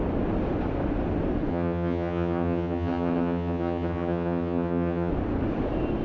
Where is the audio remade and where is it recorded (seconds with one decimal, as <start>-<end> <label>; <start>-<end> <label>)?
0.0-1.5 recorded; 1.5-5.1 remade; 5.1-6.0 recorded